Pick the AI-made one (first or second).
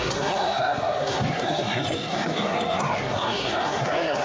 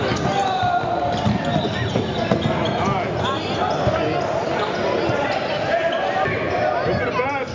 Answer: first